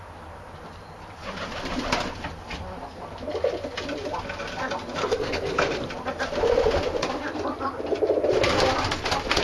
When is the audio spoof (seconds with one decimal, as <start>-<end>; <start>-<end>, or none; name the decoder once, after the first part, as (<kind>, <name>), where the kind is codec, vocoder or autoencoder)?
5.0-5.8 (codec, SNAC)